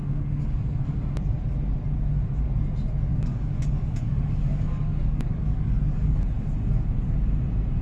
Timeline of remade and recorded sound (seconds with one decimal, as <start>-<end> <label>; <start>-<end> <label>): 0.0-1.1 remade; 1.1-3.1 recorded; 3.1-6.2 remade; 6.2-7.8 recorded